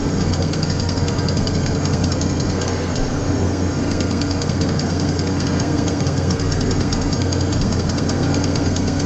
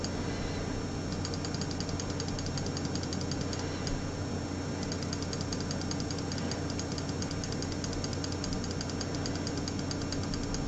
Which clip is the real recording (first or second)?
second